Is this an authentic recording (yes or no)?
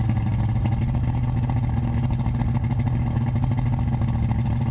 yes